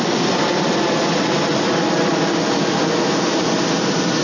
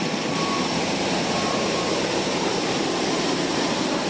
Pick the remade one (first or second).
second